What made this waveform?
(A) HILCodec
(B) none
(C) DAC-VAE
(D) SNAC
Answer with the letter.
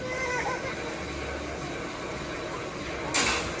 B